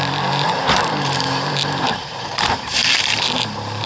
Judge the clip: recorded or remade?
remade